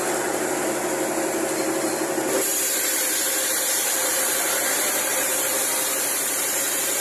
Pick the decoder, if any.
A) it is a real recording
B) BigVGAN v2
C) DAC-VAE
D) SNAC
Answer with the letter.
B